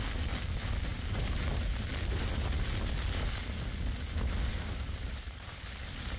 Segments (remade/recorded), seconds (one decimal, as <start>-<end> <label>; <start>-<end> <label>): 0.0-0.9 recorded; 0.9-1.8 remade; 1.8-4.5 recorded; 4.5-6.2 remade